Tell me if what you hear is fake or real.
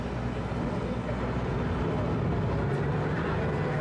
real